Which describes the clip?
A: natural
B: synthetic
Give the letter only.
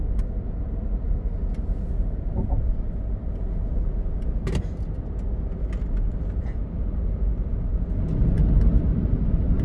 A